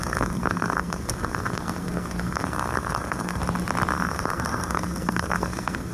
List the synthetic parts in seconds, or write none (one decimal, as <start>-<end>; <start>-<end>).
0.0-3.4; 3.9-5.9